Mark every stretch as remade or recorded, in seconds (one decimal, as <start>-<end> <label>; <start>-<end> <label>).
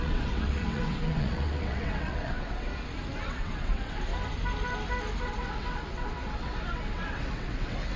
0.0-2.7 remade; 2.7-3.2 recorded; 3.2-4.1 remade; 4.1-5.2 recorded; 5.2-8.0 remade